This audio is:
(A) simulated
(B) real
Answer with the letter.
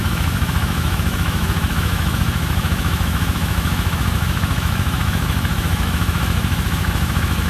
A